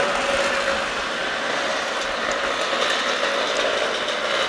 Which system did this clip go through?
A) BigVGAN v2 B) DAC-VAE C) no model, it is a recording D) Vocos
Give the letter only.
C